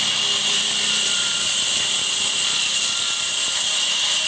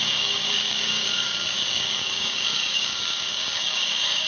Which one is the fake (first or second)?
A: second